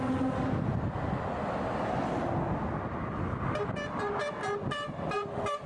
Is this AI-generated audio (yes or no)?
no